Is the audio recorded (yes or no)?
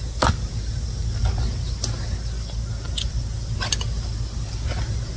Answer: yes